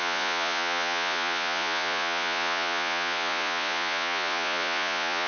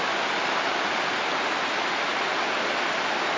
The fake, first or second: first